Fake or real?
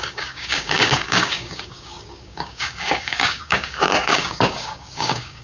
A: fake